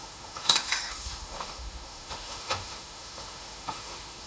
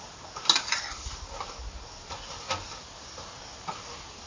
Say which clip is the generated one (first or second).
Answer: first